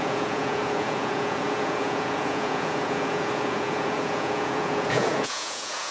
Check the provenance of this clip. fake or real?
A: fake